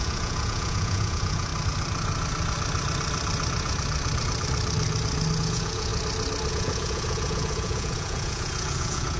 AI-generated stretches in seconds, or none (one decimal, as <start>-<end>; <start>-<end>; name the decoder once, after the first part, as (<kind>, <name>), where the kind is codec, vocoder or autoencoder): 0.0-1.5 (vocoder, Vocos); 5.4-5.9; 6.5-9.2